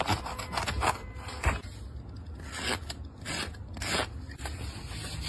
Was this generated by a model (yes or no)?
no